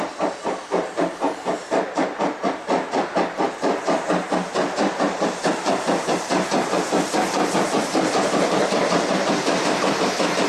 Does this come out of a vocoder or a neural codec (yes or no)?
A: yes